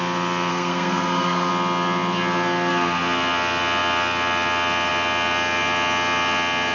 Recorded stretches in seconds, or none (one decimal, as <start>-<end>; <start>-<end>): 0.0-0.5; 1.5-6.7